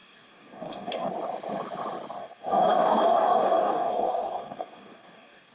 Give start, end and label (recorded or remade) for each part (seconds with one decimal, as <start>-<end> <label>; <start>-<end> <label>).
0.0-1.1 remade; 1.1-2.2 recorded; 2.2-5.5 remade